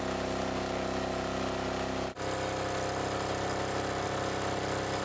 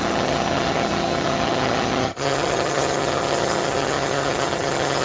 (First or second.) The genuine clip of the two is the first